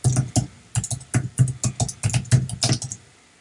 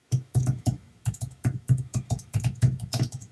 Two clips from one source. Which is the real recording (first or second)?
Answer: first